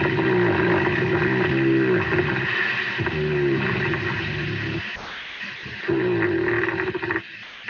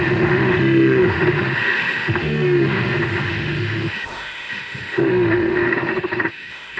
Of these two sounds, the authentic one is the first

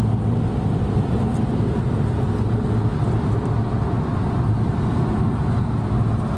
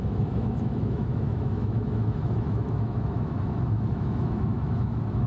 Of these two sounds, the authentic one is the first